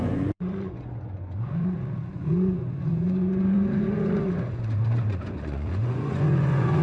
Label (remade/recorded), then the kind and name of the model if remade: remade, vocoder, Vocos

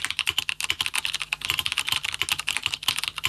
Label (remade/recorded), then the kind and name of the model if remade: recorded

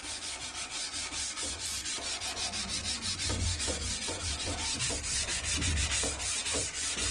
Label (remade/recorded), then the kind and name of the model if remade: remade, vocoder, Vocos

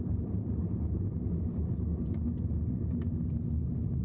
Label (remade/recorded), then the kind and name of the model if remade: recorded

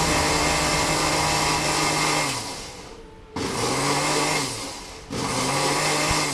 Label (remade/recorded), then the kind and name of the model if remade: recorded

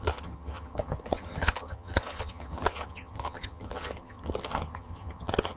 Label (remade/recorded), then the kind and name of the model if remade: remade, vocoder, HiFi-GAN